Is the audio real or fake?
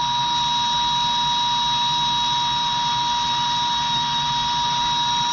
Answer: real